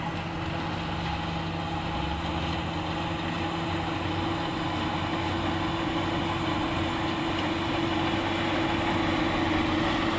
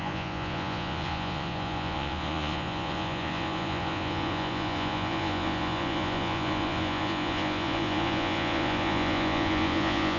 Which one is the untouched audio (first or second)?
first